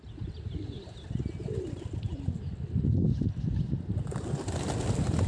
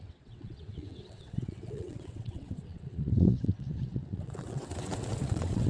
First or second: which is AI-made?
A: second